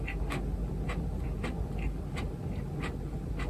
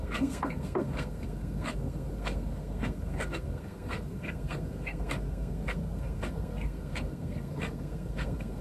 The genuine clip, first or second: first